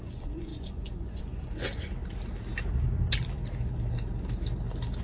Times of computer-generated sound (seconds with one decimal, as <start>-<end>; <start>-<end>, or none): 0.0-2.0